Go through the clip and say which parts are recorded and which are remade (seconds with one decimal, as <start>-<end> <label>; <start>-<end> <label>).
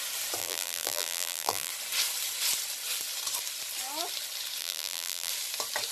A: 0.0-0.4 recorded; 0.4-1.7 remade; 1.7-4.6 recorded; 4.6-5.3 remade; 5.3-5.9 recorded